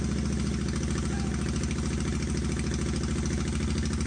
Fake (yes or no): no